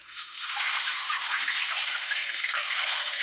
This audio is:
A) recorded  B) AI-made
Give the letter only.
B